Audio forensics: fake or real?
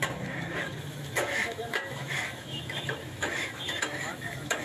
fake